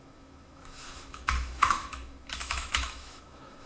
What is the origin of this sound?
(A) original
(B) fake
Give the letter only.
B